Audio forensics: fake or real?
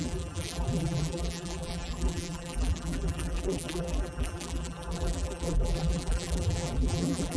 fake